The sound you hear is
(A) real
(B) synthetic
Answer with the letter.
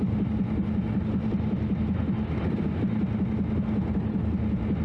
A